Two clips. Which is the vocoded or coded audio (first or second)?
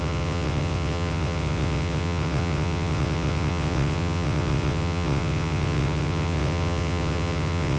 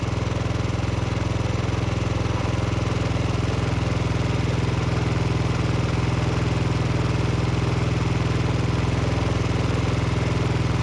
first